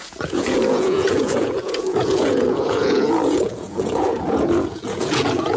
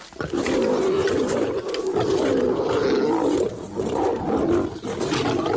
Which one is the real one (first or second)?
second